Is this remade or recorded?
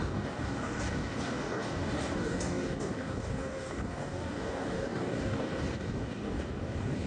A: remade